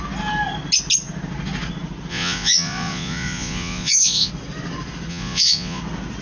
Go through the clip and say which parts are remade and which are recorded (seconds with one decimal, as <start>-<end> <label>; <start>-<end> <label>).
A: 0.0-2.1 recorded; 2.1-4.3 remade; 4.3-5.1 recorded; 5.1-5.8 remade; 5.8-6.2 recorded